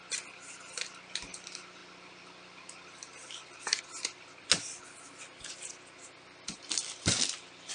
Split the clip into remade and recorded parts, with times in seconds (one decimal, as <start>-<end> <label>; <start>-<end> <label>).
0.0-7.7 recorded